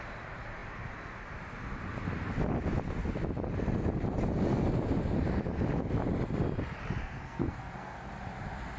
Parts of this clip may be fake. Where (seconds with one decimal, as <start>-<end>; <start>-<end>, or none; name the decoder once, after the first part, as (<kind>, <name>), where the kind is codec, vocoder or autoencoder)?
7.0-8.1 (codec, SNAC)